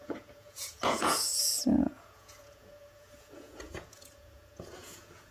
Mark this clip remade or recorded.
remade